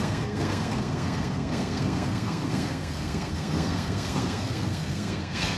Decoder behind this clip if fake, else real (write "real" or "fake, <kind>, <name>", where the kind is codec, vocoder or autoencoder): fake, codec, SNAC